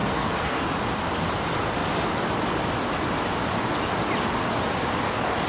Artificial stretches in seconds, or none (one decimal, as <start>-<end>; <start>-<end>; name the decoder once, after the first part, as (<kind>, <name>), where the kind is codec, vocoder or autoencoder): 0.0-0.7 (codec, SNAC)